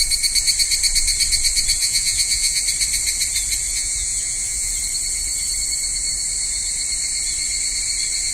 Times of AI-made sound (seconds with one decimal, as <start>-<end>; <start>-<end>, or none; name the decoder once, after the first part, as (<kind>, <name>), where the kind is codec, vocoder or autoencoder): 1.8-2.6 (vocoder, Vocos); 3.7-4.7